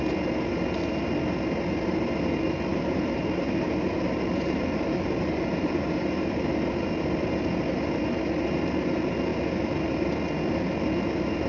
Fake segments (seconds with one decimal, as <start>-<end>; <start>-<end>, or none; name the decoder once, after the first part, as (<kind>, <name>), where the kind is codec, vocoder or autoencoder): 2.7-6.4 (vocoder, BigVGAN v2)